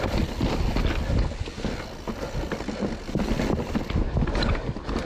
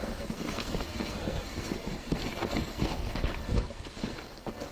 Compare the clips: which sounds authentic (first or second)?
first